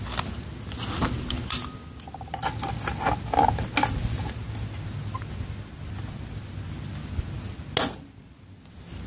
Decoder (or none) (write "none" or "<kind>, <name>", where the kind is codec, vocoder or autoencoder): none